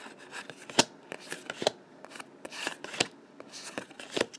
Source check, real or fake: real